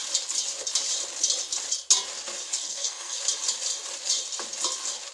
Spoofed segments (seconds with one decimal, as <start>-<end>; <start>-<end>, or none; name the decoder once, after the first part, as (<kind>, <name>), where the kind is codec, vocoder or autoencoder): 2.5-3.2 (codec, SNAC)